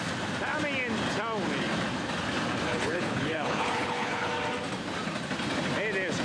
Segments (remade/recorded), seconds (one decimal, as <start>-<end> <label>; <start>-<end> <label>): 0.0-2.7 recorded; 2.7-4.3 remade; 4.3-6.2 recorded